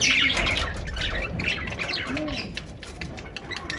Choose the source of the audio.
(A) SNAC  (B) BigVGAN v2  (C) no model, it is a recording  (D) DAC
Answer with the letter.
C